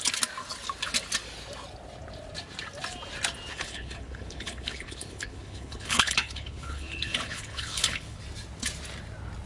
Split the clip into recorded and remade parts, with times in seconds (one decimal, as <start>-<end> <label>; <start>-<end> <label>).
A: 0.0-3.5 recorded; 3.5-8.2 remade; 8.2-9.5 recorded